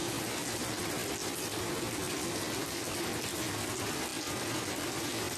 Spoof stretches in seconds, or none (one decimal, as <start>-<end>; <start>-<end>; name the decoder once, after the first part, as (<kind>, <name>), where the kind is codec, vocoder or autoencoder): none